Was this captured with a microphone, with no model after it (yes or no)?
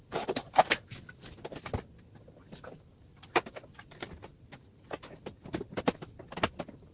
yes